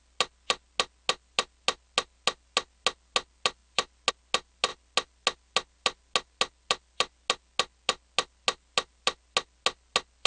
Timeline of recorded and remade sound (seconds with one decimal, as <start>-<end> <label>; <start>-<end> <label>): 0.0-10.3 recorded